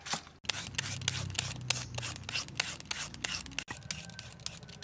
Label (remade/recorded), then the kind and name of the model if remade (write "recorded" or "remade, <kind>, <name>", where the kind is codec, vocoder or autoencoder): recorded